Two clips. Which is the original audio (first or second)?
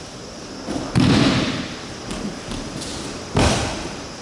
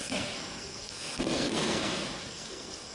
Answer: first